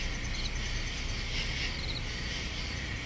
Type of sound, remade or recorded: recorded